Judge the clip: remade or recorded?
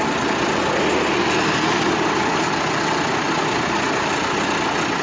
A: recorded